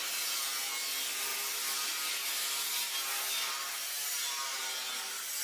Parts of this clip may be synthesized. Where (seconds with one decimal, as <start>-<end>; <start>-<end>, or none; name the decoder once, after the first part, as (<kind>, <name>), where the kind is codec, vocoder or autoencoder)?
none